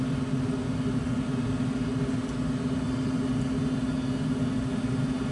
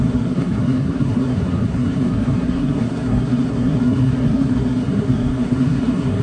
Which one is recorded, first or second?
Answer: first